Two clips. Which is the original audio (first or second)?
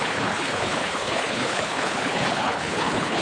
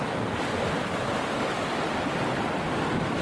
second